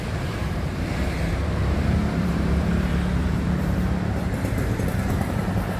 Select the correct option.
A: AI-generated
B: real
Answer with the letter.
A